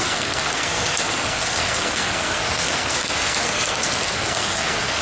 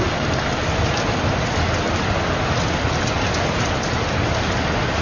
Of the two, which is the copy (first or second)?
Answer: first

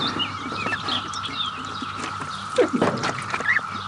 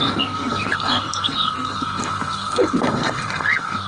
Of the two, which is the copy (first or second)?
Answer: second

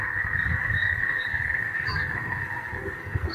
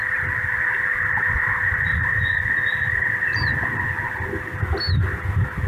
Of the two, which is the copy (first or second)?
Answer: first